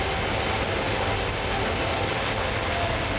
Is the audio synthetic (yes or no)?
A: no